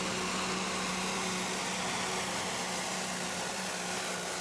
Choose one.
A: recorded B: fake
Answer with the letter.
A